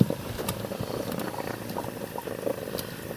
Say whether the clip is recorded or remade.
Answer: recorded